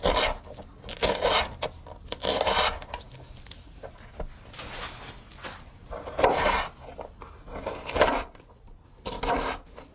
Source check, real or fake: real